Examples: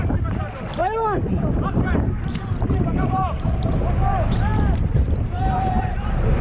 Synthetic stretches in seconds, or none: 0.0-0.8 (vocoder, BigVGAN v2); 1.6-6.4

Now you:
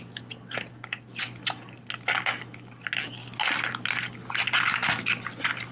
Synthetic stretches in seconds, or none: none